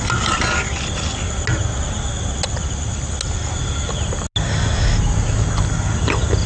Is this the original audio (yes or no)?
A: yes